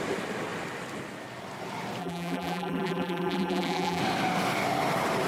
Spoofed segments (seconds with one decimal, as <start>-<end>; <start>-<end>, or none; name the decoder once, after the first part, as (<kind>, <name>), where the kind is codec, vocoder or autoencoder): 2.0-4.0 (vocoder, BigVGAN v2)

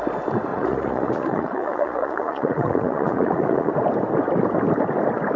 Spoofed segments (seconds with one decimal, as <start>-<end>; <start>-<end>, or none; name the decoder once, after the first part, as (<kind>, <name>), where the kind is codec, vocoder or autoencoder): 0.5-3.7 (vocoder, Vocos)